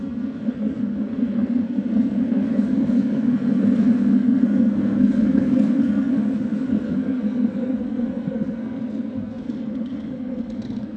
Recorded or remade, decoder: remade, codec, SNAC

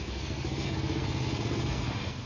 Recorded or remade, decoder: remade, codec, SNAC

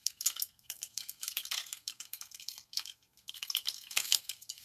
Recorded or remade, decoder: remade, codec, SNAC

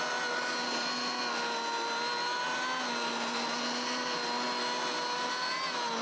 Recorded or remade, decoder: recorded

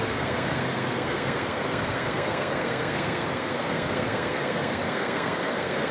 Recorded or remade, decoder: remade, codec, SNAC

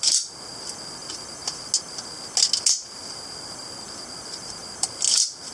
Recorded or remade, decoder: recorded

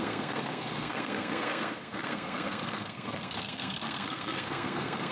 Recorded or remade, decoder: remade, codec, SNAC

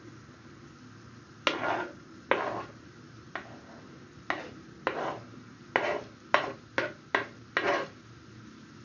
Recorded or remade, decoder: recorded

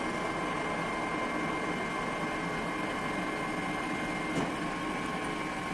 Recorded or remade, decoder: recorded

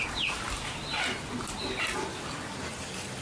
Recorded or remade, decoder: recorded